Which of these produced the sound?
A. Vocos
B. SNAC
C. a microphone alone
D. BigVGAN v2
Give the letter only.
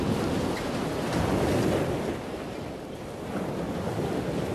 C